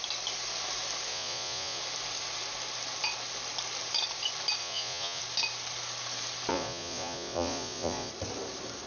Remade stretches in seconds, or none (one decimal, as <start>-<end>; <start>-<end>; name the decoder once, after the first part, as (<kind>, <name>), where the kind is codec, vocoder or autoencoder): 1.1-1.8 (vocoder, Vocos); 4.6-5.2; 6.5-8.1